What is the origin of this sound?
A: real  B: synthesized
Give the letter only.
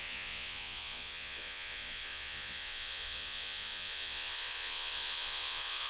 B